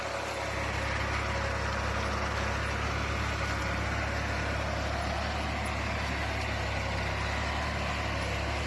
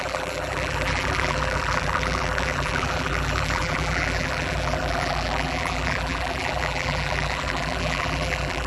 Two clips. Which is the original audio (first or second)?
first